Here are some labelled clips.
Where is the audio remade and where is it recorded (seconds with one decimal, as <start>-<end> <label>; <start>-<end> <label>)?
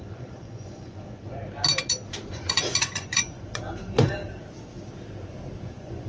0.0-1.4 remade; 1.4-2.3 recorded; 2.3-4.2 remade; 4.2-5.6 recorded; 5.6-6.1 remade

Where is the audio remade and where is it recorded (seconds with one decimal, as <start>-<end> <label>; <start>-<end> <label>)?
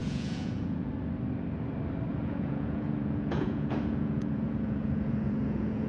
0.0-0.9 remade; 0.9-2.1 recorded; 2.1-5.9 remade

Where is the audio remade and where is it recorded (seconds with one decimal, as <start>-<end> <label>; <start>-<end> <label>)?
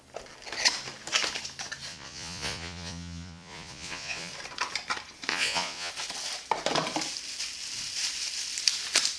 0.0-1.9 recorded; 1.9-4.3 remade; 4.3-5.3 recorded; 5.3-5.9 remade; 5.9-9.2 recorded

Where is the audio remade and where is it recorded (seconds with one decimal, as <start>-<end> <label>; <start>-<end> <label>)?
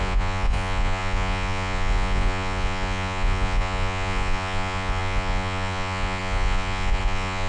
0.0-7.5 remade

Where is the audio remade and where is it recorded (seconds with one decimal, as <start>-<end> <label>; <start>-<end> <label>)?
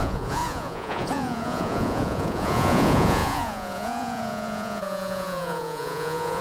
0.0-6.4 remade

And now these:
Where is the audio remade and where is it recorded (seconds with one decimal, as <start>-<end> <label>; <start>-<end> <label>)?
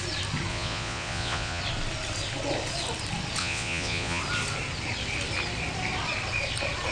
0.0-0.5 recorded; 0.5-1.6 remade; 1.6-3.4 recorded; 3.4-4.2 remade; 4.2-6.9 recorded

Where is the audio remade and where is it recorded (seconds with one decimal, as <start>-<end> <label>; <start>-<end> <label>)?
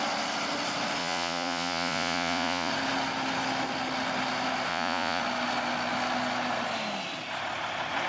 0.0-1.0 recorded; 1.0-2.7 remade; 2.7-4.7 recorded; 4.7-5.2 remade; 5.2-8.1 recorded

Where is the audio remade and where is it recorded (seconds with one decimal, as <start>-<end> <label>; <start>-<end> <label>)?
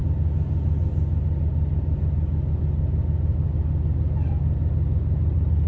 0.0-5.7 recorded